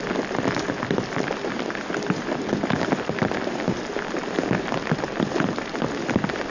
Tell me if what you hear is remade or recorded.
remade